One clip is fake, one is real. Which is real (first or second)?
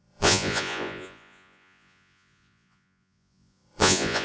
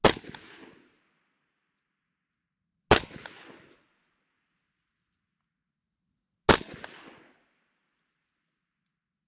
second